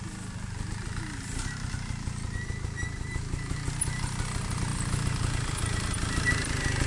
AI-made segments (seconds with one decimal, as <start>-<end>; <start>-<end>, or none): none

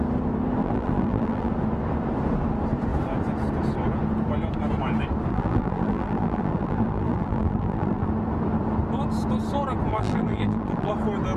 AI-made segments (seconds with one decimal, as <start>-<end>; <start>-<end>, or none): 0.6-1.5; 5.3-8.1; 9.9-10.9